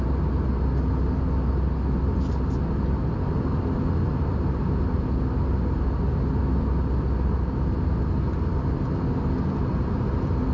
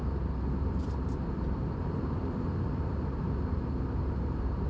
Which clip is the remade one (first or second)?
second